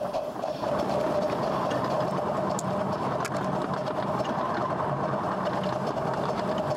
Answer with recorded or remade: recorded